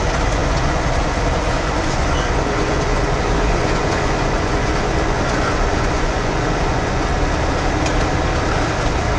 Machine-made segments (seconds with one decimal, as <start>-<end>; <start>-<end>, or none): 0.0-7.1